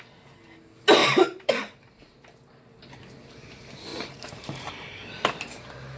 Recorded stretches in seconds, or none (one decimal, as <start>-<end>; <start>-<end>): 0.0-1.0; 1.5-3.9; 4.7-6.0

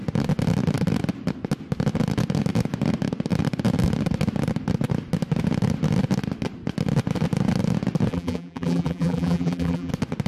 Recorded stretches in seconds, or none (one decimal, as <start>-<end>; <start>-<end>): 0.0-8.1; 9.9-10.3